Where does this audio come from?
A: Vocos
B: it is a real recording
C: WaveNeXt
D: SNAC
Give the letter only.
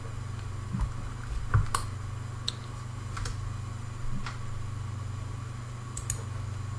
B